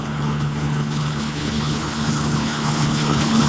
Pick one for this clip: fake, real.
fake